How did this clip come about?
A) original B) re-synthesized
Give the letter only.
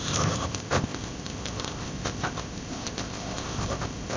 B